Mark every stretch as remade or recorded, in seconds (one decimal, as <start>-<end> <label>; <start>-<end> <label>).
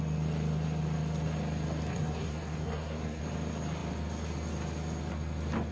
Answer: 0.0-1.9 recorded; 1.9-3.2 remade; 3.2-5.7 recorded